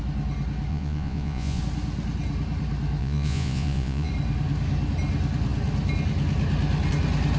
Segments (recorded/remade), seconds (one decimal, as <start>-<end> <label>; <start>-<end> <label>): 0.0-0.7 recorded; 0.7-1.6 remade; 1.6-3.0 recorded; 3.0-4.1 remade; 4.1-7.4 recorded